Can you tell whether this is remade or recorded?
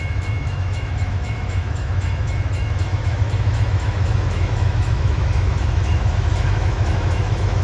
remade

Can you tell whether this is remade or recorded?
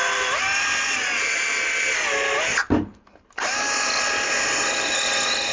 recorded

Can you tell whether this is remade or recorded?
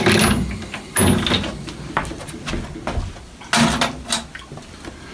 recorded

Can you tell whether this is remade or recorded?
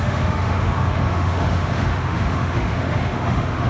remade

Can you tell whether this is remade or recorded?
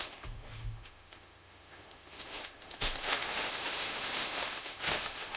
remade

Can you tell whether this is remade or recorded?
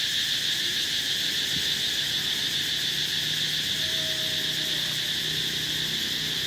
recorded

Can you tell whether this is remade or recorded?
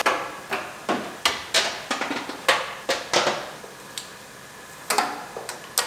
recorded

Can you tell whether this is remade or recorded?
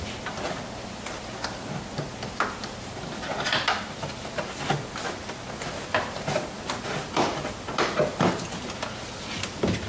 recorded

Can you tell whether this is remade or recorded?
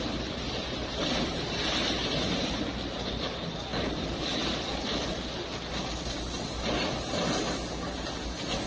recorded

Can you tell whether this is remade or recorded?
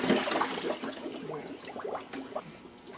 recorded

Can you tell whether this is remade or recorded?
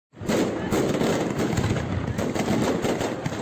recorded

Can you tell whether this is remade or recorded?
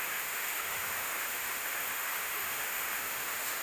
remade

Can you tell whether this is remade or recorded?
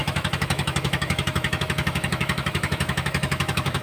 remade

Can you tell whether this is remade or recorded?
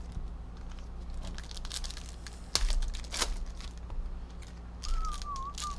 recorded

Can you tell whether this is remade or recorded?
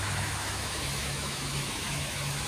remade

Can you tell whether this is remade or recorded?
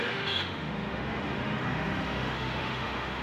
remade